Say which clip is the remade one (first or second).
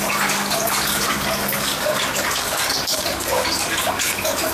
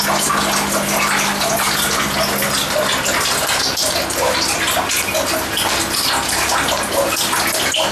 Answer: first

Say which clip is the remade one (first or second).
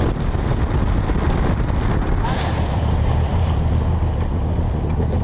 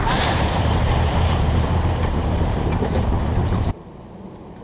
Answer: second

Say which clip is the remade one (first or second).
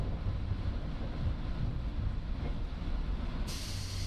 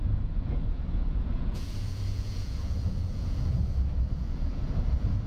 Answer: second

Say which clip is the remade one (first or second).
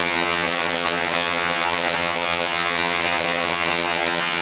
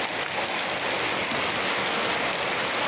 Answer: first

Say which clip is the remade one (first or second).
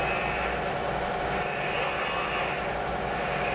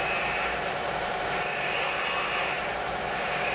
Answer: second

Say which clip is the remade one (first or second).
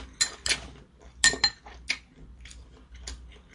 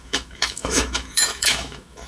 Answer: second